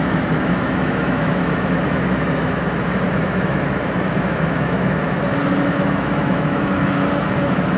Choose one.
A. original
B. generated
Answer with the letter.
B